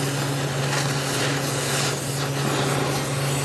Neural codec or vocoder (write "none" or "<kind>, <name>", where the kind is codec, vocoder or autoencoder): none